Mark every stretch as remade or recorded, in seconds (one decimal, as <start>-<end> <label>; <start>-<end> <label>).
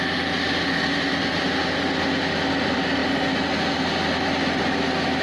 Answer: 0.0-5.2 recorded